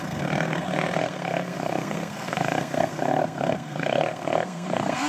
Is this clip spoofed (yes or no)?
yes